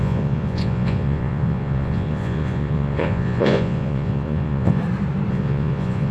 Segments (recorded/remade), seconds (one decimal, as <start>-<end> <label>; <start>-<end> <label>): 0.0-4.8 remade; 4.8-5.3 recorded; 5.3-6.1 remade